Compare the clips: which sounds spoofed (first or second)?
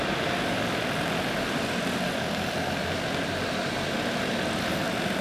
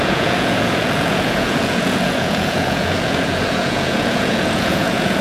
second